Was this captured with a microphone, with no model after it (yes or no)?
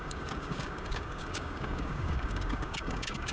no